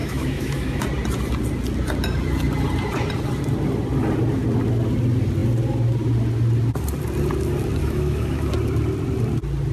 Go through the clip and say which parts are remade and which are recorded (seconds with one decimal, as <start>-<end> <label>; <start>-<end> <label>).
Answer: 0.0-0.8 remade; 0.8-7.8 recorded; 7.8-8.5 remade; 8.5-9.7 recorded